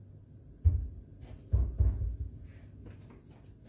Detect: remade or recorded recorded